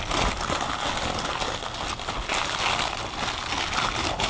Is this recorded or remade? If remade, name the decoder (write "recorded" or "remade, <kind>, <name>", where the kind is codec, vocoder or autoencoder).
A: recorded